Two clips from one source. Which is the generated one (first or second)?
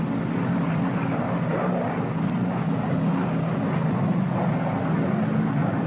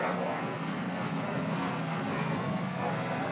second